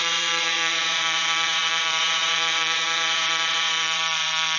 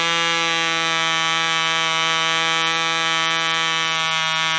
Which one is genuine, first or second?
second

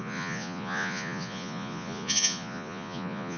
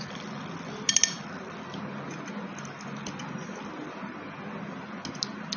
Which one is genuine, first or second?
second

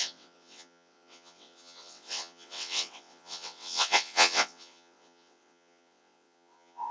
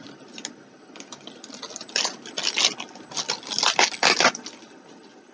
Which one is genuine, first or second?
second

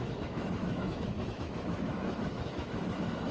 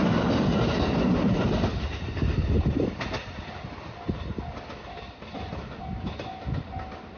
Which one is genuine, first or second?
second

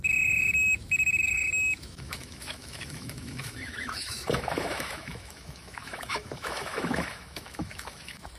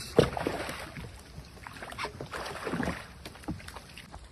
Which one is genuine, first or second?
second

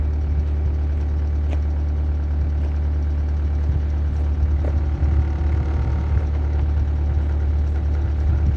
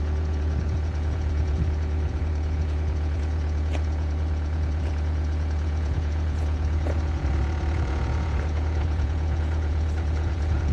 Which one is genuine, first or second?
first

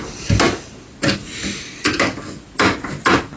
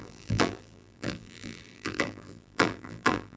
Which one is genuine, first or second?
first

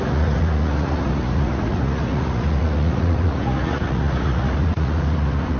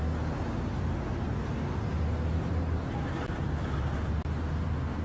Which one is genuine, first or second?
second